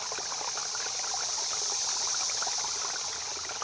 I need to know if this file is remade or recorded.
recorded